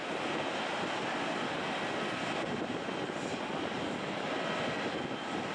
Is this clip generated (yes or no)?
no